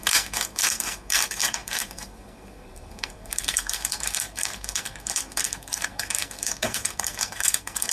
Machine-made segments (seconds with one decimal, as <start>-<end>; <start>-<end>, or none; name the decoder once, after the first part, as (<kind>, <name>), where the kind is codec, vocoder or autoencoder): 0.0-7.9 (codec, SNAC)